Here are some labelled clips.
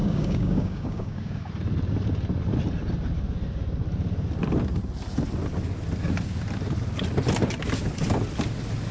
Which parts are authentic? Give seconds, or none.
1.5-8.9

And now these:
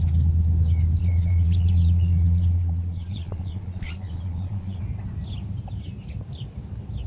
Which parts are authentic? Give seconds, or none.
0.0-1.0; 4.8-7.1